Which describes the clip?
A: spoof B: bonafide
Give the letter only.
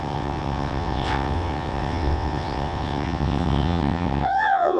A